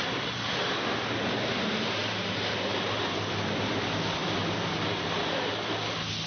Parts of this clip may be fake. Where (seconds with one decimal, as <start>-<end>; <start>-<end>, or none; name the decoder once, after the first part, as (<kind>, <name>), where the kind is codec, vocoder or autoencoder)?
2.0-3.0 (vocoder, BigVGAN v2)